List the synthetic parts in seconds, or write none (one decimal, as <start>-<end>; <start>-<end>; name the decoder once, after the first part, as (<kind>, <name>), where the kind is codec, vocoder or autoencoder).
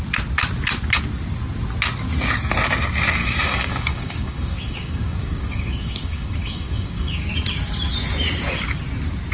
3.2-7.3 (codec, DAC)